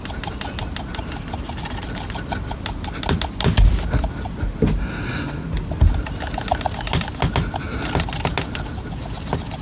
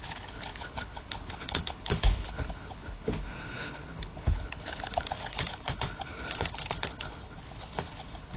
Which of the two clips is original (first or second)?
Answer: first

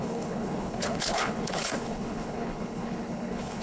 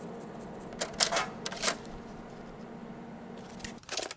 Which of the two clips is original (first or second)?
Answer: second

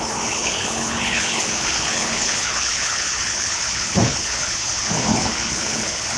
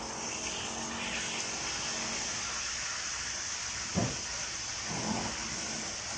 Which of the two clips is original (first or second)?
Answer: second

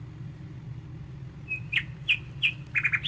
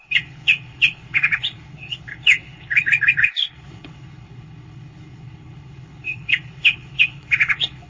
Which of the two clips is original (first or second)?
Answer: first